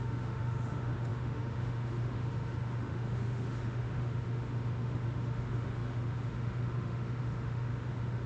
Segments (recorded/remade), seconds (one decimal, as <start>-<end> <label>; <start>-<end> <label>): 0.0-8.3 remade